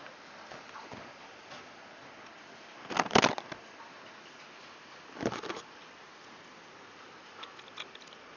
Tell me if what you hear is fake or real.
real